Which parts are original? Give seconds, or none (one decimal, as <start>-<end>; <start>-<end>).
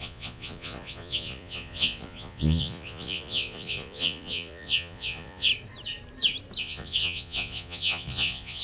5.5-6.6